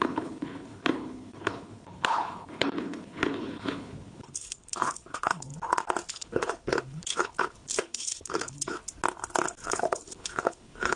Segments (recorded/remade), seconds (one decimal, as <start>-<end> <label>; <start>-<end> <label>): 0.0-5.5 remade; 5.5-6.1 recorded; 6.1-8.8 remade; 8.8-9.6 recorded; 9.6-11.0 remade